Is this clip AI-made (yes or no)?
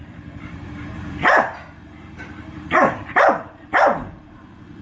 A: yes